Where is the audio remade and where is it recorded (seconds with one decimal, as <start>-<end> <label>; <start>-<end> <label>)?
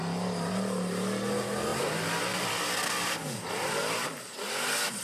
0.0-5.0 recorded